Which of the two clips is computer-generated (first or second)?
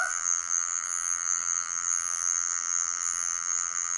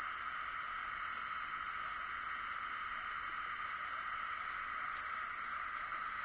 first